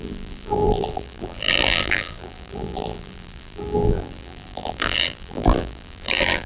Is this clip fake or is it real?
fake